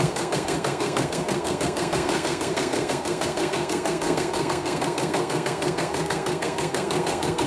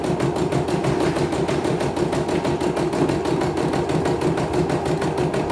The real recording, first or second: second